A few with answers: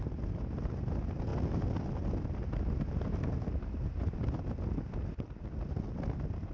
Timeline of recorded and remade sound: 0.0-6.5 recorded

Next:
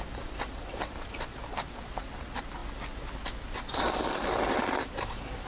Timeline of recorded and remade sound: 0.0-2.6 remade; 2.6-3.5 recorded; 3.5-5.5 remade